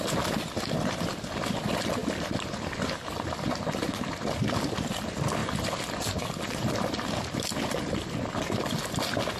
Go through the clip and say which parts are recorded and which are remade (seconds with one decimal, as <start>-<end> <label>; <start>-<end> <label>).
0.0-9.4 recorded